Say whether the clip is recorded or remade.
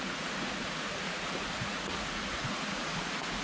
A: remade